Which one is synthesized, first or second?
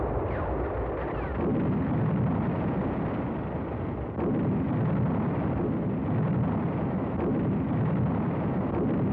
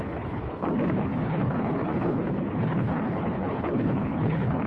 second